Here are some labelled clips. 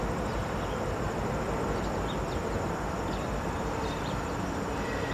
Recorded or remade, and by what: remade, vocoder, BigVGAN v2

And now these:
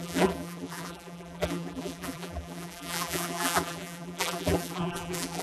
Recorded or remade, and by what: remade, vocoder, BigVGAN v2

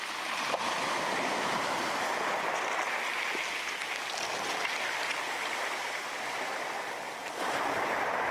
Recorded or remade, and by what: recorded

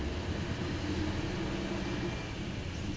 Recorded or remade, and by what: recorded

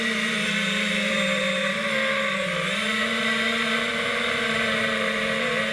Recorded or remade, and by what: remade, vocoder, BigVGAN v2